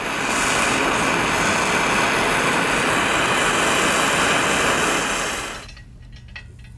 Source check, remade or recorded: recorded